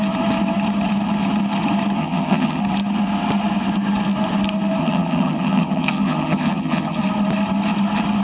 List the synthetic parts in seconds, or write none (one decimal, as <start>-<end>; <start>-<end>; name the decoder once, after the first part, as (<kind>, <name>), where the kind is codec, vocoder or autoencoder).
2.0-2.6 (vocoder, HiFi-GAN); 4.8-7.0